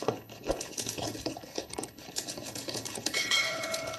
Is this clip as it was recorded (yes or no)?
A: no